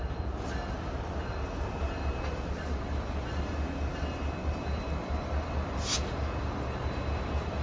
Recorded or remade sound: recorded